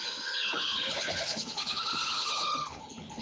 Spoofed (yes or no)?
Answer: yes